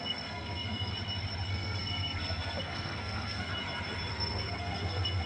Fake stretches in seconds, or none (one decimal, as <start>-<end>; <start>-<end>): 0.0-0.9; 1.5-3.5; 4.1-5.3